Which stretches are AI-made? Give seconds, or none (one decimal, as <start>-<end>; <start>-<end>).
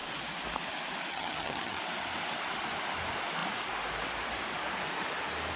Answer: 1.1-1.8